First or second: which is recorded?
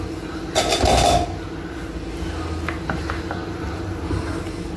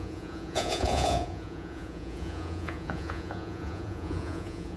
first